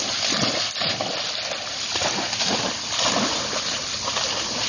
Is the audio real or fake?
real